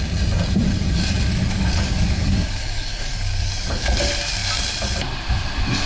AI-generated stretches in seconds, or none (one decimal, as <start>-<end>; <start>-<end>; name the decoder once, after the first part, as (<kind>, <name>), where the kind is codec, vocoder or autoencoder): 1.3-3.8 (codec, DAC)